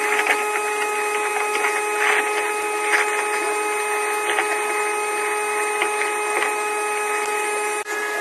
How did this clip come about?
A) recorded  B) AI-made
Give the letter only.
A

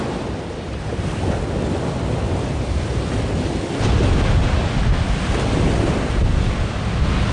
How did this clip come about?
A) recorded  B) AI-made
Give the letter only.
A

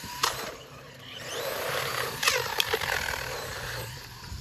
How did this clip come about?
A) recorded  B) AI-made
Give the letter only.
B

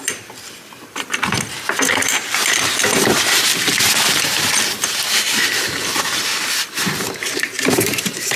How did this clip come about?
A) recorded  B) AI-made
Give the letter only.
B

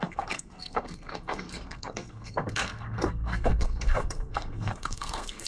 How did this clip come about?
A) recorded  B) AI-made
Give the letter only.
B